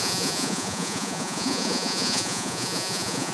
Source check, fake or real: fake